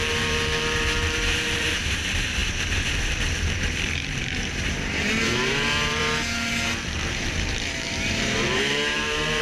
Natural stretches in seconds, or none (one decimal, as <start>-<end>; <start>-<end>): 6.0-7.1